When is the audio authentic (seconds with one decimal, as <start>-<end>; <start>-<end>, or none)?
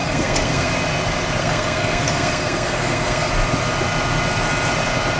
0.7-1.4; 3.3-5.2